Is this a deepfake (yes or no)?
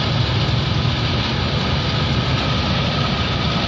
no